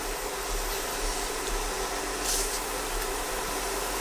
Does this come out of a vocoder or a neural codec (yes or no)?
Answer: no